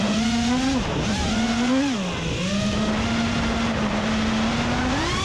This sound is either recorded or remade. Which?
recorded